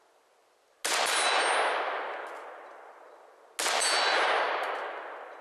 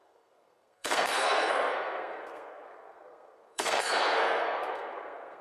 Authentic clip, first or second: first